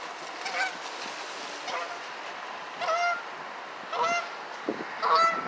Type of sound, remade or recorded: recorded